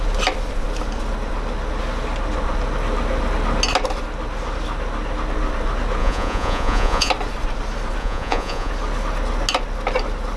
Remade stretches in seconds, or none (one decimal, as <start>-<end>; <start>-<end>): 6.0-7.1; 8.0-8.7